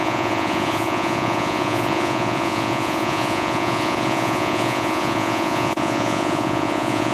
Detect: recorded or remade remade